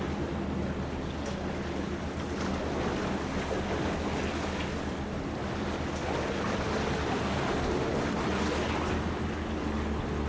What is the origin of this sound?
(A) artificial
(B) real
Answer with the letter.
B